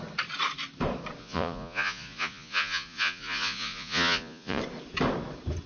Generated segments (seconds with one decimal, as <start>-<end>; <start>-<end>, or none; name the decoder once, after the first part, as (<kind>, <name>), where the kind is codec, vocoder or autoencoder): 1.2-4.6 (vocoder, Vocos)